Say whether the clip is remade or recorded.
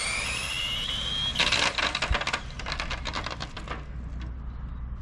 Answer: recorded